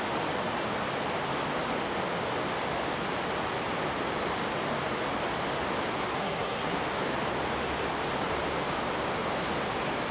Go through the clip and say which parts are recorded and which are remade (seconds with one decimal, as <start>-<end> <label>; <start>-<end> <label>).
0.0-6.2 recorded; 6.2-6.8 remade; 6.8-10.1 recorded